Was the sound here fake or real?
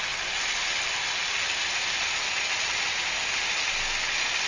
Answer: real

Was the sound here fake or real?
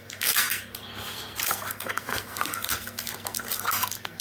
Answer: fake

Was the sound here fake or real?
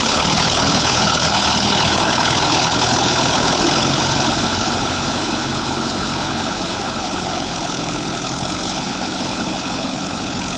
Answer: fake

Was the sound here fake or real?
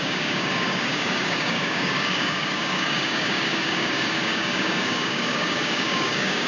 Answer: fake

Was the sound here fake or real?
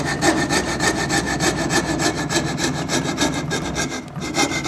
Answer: real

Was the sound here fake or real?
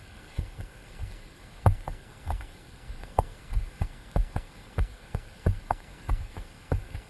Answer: fake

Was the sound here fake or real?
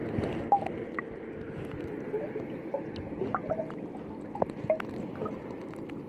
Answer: real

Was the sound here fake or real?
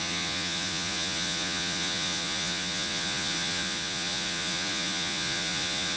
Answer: fake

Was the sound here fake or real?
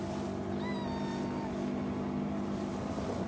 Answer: real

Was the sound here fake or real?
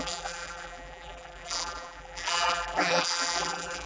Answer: fake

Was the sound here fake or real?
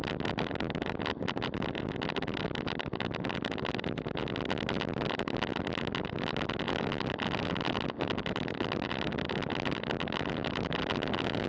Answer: real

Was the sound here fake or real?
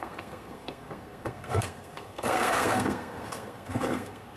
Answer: fake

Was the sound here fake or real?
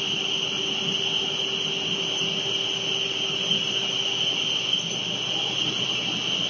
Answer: real